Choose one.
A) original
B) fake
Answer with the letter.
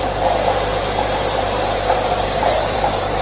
B